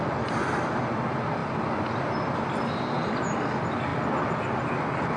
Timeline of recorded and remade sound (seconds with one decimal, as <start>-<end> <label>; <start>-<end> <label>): 0.0-5.2 recorded